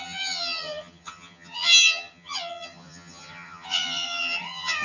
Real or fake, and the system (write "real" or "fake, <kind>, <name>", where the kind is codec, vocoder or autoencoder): fake, vocoder, HiFi-GAN